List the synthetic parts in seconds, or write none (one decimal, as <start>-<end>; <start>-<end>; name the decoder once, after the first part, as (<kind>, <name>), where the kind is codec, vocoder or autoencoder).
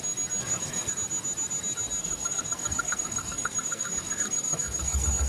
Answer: 0.4-0.9 (codec, SNAC); 2.0-5.3